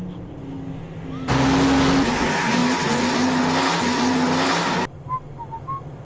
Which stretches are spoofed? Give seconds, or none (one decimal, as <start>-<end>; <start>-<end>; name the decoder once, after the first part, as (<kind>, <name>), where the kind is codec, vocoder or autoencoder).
none